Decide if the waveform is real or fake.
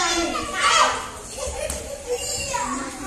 real